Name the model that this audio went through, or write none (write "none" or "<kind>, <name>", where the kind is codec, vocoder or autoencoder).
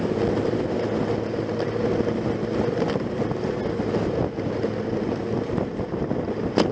none